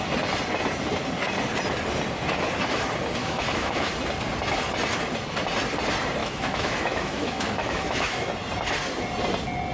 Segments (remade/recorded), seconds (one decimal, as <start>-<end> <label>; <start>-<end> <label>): 0.0-3.2 recorded; 3.2-3.9 remade; 3.9-6.2 recorded; 6.2-8.3 remade; 8.3-9.7 recorded